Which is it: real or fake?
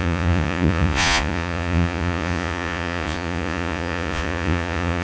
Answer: fake